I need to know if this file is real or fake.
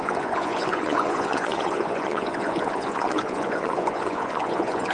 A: fake